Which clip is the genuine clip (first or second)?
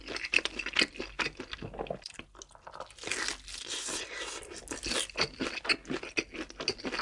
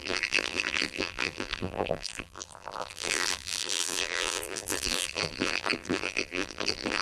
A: first